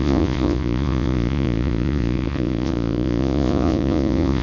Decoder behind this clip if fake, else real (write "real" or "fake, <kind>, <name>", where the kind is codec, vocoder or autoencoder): fake, vocoder, Vocos